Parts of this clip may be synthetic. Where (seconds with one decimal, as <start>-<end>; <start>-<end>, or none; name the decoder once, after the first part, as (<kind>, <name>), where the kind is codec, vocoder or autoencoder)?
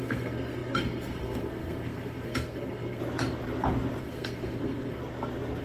0.0-3.0 (codec, SNAC); 4.0-5.0